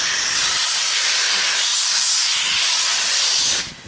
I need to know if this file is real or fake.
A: fake